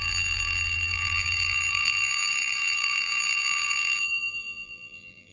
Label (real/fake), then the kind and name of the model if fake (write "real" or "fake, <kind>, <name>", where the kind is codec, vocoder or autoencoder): fake, vocoder, BigVGAN v2